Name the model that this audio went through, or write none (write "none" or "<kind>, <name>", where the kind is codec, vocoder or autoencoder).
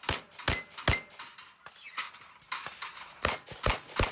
none